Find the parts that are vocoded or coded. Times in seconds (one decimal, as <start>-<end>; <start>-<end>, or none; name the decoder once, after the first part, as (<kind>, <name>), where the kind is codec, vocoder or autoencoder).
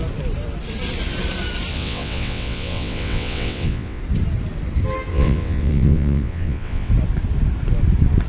1.7-4.0 (vocoder, WaveNeXt); 5.1-6.9